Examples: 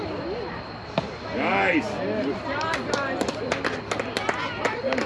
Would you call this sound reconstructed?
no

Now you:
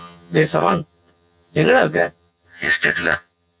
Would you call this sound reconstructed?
yes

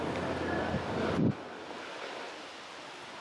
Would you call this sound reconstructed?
no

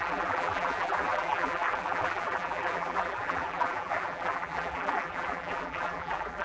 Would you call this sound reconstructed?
yes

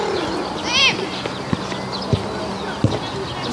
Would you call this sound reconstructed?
no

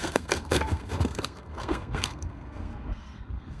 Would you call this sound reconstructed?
yes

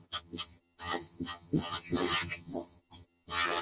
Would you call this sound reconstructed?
yes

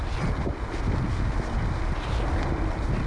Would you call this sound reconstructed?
no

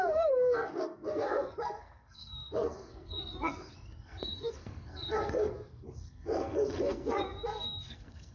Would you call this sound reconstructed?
yes